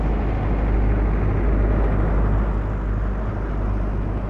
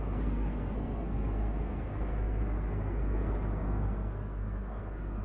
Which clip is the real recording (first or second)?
first